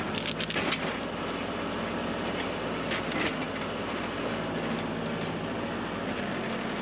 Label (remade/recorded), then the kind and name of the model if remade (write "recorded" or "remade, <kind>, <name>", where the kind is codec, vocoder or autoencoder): recorded